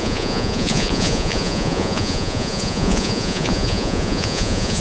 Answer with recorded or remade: remade